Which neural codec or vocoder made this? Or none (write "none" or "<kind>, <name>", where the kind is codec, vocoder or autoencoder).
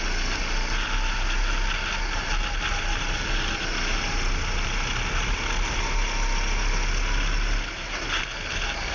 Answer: none